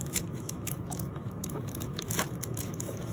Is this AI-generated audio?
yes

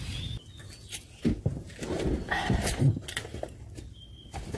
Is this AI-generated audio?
no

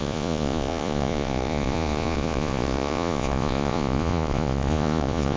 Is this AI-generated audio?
yes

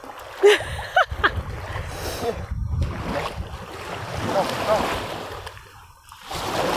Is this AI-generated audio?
no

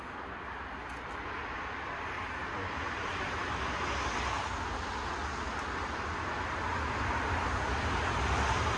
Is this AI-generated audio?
no